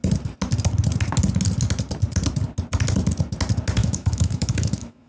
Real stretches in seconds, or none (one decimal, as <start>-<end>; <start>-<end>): 0.0-3.8